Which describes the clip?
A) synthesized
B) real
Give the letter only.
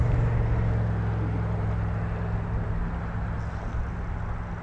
B